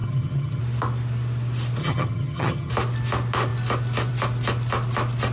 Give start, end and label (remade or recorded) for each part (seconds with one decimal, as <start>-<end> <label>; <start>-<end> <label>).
0.0-0.6 remade; 0.6-1.8 recorded; 1.8-2.7 remade; 2.7-5.3 recorded